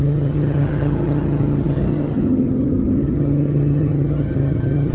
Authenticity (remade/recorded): remade